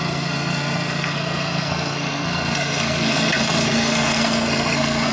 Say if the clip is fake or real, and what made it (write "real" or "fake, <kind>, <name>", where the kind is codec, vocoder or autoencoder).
fake, codec, SNAC